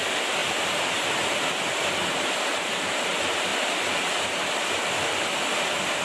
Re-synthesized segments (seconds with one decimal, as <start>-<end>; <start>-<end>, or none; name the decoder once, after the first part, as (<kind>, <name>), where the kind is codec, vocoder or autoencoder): 0.4-1.1 (vocoder, BigVGAN v2); 2.5-3.1

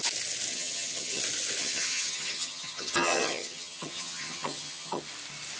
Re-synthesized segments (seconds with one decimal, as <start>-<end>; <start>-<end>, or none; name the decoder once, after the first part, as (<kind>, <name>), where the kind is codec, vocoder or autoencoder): 0.5-1.2 (vocoder, HiFi-GAN); 1.6-5.0

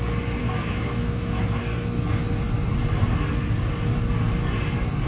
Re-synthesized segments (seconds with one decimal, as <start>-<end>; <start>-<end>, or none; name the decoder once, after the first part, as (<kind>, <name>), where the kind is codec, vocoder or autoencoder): 0.4-1.6 (autoencoder, DAC-VAE)